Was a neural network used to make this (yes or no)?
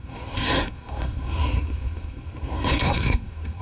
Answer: yes